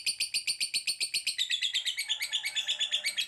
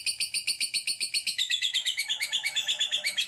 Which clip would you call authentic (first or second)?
first